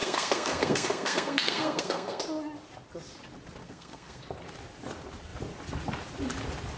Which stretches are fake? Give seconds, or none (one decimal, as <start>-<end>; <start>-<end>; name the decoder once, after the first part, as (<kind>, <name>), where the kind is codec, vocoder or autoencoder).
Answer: 0.0-2.2 (codec, SNAC); 3.6-4.2